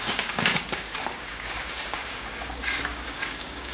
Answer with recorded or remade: remade